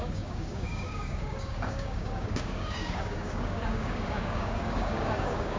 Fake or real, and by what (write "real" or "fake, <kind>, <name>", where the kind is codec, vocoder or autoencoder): fake, codec, DAC